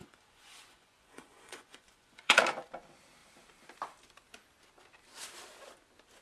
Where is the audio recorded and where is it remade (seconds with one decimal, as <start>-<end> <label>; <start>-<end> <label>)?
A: 0.0-2.4 remade; 2.4-6.2 recorded